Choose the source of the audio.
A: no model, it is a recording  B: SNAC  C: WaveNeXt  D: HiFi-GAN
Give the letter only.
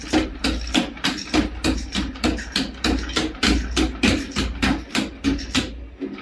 A